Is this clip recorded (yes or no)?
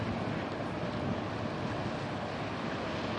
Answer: yes